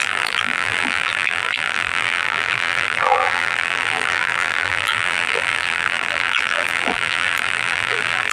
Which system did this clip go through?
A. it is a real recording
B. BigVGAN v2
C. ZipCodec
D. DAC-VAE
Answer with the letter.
B